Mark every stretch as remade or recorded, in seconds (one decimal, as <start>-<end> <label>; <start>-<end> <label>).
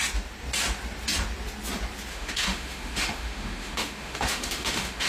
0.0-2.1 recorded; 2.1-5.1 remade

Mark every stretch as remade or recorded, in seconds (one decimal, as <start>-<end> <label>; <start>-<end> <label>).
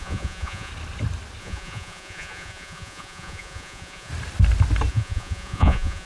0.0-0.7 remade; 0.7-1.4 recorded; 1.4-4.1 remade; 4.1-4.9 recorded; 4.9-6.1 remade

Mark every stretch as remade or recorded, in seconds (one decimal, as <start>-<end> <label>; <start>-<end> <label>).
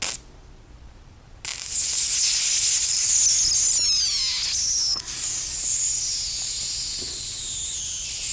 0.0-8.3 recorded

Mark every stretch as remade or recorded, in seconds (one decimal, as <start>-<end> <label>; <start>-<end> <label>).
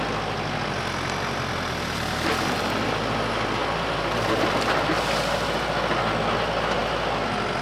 0.0-7.6 recorded